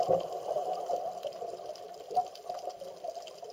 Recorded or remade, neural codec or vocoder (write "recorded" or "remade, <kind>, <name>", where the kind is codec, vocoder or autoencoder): remade, vocoder, BigVGAN v2